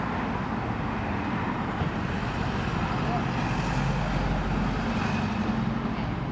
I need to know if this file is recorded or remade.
recorded